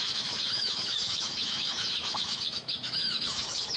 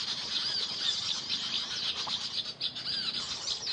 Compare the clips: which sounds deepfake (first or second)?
first